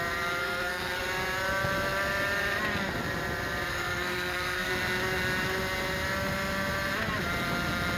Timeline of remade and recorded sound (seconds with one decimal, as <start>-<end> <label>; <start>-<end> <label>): 0.0-0.4 recorded; 0.4-1.0 remade; 1.0-3.7 recorded; 3.7-4.7 remade; 4.7-8.0 recorded